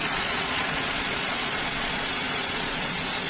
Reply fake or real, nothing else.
fake